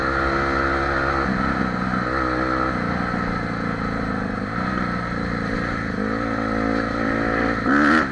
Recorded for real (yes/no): yes